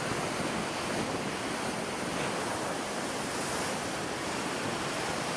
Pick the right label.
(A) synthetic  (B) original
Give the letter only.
B